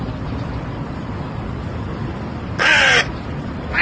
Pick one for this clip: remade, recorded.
recorded